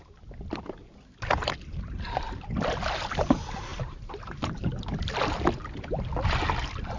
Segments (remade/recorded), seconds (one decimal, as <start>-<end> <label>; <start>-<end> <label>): 0.0-3.7 recorded; 3.7-4.4 remade; 4.4-7.0 recorded

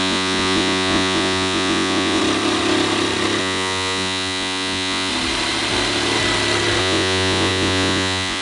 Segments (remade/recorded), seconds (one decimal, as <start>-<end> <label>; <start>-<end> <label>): 0.0-2.2 remade; 2.2-3.4 recorded; 3.4-5.1 remade; 5.1-6.8 recorded; 6.8-8.4 remade

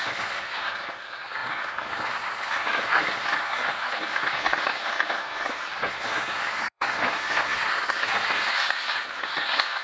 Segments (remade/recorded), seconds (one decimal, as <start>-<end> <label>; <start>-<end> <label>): 0.0-9.8 remade